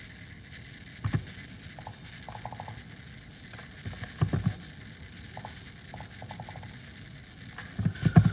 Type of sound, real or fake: real